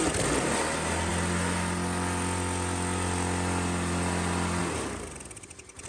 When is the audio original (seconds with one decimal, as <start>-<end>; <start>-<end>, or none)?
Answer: 0.0-5.9